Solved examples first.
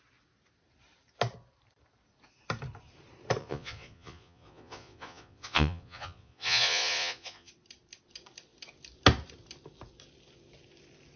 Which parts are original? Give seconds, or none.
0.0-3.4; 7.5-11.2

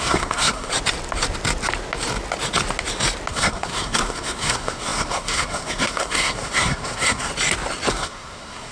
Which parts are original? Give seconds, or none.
0.7-3.3; 7.3-7.9